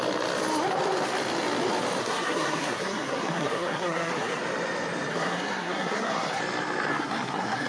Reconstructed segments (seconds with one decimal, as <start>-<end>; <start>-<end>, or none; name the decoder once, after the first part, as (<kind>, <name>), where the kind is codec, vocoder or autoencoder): 2.0-4.4 (codec, SNAC); 5.1-6.4; 6.9-7.7